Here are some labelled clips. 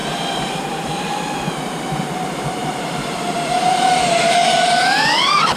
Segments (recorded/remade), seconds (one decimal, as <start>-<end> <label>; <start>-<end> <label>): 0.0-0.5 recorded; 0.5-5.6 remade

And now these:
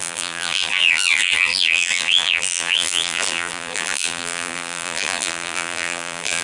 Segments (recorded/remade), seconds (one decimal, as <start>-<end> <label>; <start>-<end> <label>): 0.0-6.4 remade

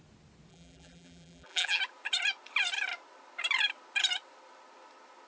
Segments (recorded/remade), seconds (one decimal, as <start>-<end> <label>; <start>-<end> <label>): 0.0-0.5 recorded; 0.5-1.8 remade; 1.8-5.3 recorded

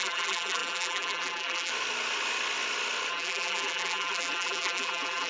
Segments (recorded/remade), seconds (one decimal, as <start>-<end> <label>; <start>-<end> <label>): 0.0-1.7 remade; 1.7-3.1 recorded; 3.1-5.3 remade

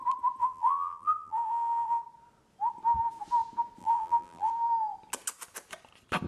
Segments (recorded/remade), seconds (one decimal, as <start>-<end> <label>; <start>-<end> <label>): 0.0-0.4 recorded; 0.4-2.0 remade; 2.0-3.8 recorded; 3.8-4.5 remade; 4.5-6.3 recorded